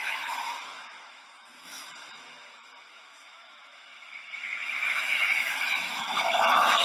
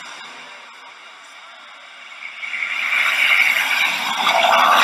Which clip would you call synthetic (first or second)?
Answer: first